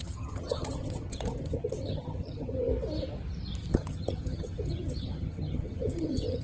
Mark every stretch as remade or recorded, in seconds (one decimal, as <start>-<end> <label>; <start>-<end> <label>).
0.0-2.7 remade; 2.7-3.7 recorded; 3.7-6.4 remade